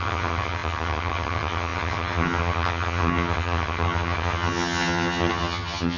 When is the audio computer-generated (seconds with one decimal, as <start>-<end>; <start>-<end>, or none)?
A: 0.0-6.0